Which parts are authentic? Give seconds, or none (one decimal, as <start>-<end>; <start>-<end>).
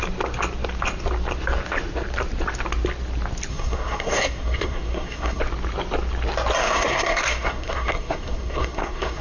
0.0-3.5; 5.4-6.6